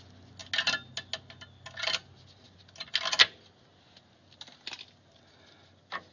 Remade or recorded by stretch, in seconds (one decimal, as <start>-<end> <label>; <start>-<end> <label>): 0.0-6.1 recorded